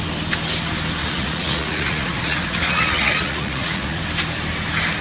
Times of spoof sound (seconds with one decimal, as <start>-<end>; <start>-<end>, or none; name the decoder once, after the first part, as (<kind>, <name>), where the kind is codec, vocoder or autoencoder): 1.0-4.0 (vocoder, Vocos)